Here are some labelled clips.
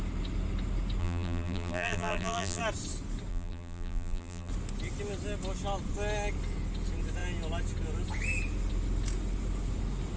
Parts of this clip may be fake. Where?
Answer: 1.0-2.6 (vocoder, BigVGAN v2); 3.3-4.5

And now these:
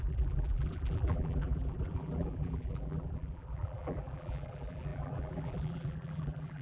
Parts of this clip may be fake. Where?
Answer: 0.0-6.6 (vocoder, BigVGAN v2)

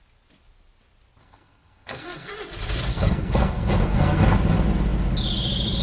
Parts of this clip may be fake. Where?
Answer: 1.2-2.3 (codec, SNAC); 2.9-4.2

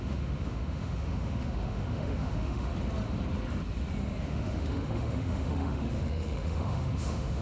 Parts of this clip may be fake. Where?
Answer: 0.0-2.7 (autoencoder, DAC-VAE); 4.2-7.4